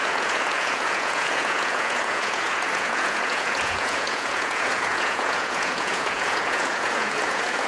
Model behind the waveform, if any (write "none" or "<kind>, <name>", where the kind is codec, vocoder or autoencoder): vocoder, Vocos